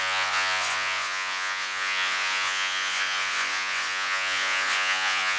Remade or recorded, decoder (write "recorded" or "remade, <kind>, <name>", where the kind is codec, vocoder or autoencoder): remade, vocoder, Vocos